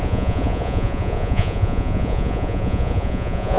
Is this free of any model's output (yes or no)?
no